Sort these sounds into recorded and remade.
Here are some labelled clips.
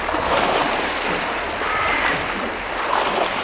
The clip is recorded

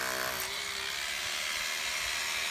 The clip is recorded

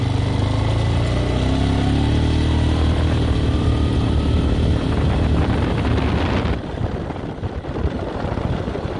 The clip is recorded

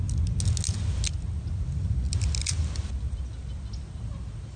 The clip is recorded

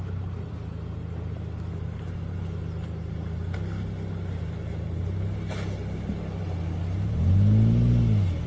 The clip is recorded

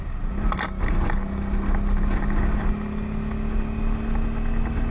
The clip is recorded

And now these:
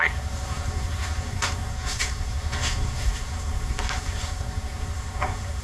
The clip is remade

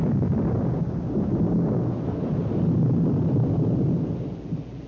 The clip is recorded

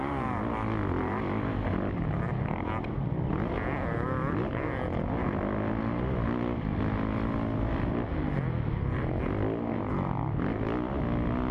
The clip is recorded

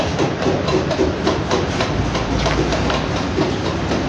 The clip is remade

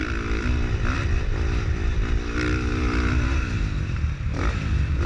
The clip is remade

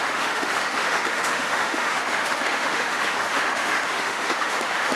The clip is remade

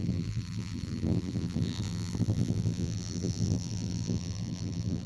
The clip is remade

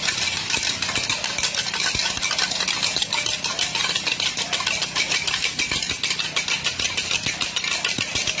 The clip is recorded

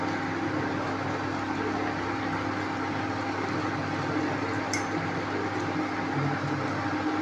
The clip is recorded